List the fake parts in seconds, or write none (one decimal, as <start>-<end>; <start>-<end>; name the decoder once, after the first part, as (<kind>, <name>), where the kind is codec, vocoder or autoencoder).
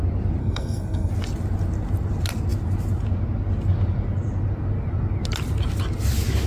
0.4-1.1 (codec, SNAC)